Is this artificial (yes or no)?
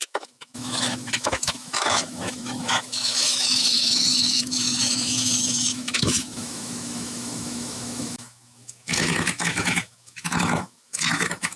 yes